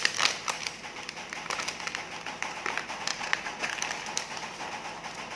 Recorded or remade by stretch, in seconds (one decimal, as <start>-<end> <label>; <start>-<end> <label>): 0.0-3.1 recorded; 3.1-3.7 remade; 3.7-5.4 recorded